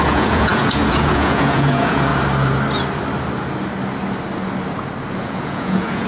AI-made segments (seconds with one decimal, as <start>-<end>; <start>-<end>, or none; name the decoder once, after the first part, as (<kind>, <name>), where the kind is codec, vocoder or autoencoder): 0.0-2.1 (vocoder, Vocos); 5.2-6.1